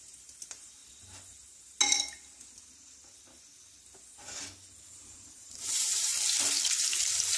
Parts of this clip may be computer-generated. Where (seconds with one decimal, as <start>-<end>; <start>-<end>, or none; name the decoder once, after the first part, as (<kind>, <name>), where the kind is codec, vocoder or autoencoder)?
0.0-0.8 (vocoder, BigVGAN v2); 4.9-6.1; 6.8-7.4